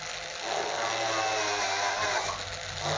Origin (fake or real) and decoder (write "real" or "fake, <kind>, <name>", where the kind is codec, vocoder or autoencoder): real